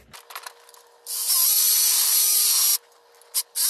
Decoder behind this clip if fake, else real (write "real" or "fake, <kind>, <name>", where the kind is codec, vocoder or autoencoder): real